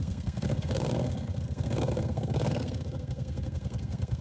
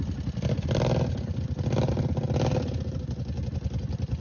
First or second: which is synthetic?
first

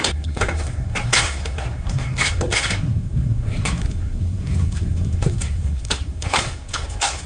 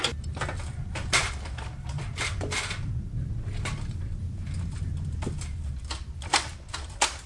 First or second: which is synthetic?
first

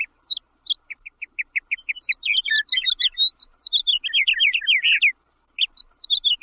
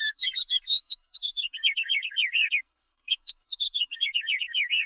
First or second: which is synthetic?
second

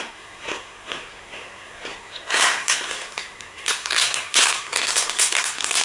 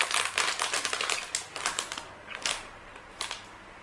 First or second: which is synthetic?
first